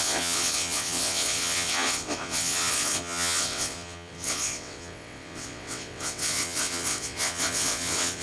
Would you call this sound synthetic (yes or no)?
yes